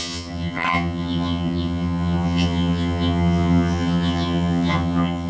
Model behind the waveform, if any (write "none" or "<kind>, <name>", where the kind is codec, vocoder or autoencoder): vocoder, HiFi-GAN